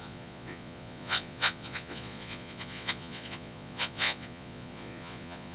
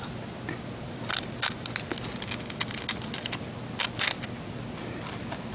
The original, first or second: second